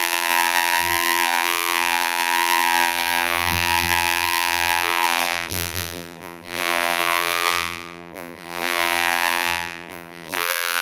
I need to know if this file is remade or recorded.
remade